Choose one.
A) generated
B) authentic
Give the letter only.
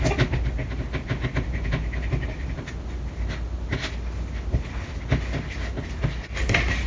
B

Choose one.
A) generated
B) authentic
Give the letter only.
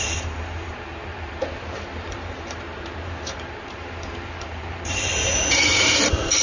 A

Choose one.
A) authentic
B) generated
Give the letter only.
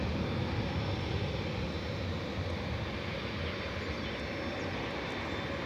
A